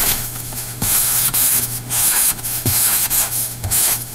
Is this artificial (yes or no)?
yes